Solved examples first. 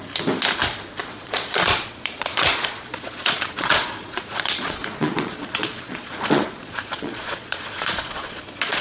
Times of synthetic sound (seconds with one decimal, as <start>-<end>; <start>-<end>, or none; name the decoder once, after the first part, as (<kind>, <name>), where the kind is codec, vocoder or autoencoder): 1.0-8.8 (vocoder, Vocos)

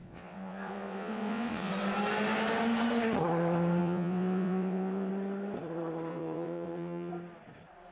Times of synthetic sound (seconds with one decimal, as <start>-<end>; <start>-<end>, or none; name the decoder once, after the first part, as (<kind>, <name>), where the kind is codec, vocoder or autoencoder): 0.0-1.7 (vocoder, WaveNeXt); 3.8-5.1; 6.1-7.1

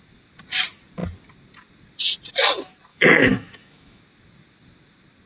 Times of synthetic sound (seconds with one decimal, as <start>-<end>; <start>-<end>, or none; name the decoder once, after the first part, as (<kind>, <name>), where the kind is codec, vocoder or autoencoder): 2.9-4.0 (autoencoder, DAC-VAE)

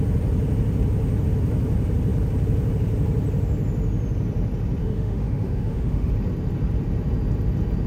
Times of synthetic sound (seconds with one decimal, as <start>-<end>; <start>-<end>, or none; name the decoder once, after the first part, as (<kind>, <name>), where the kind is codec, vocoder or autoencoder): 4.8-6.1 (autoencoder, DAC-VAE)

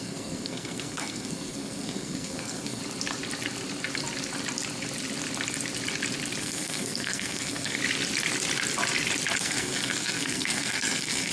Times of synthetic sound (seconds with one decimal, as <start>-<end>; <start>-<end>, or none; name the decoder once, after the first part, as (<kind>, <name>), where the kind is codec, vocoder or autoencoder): 0.0-2.8 (codec, SNAC); 6.4-7.8; 9.4-11.3